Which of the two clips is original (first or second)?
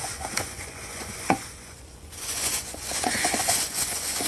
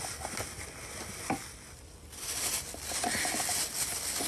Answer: second